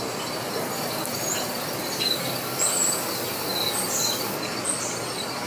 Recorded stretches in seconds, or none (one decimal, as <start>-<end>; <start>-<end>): 0.0-5.5

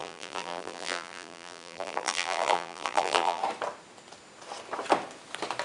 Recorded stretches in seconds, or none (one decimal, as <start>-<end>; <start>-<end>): 3.4-5.6

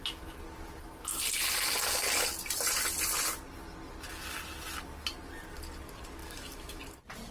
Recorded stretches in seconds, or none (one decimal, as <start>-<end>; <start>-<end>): 0.0-6.2; 6.8-7.3